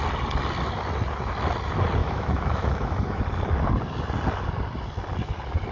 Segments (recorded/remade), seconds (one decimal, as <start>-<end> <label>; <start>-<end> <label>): 0.0-2.0 recorded; 2.0-3.2 remade; 3.2-5.7 recorded